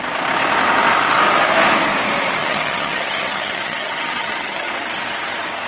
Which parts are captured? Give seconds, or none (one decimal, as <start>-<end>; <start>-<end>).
0.0-2.4; 4.7-5.7